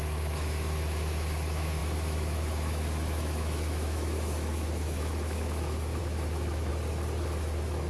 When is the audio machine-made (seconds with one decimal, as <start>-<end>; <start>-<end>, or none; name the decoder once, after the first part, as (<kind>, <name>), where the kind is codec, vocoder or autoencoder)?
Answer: 0.0-6.7 (autoencoder, DAC-VAE); 7.2-7.9